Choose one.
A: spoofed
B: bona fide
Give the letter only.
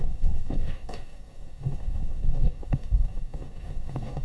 A